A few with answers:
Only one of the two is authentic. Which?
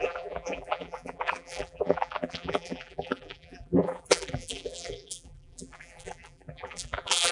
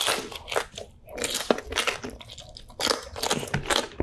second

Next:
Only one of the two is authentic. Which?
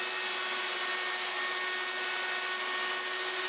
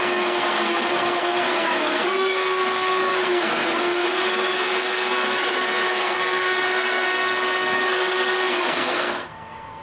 first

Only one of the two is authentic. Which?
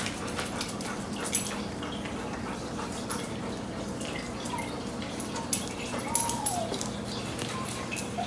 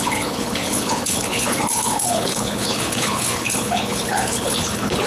first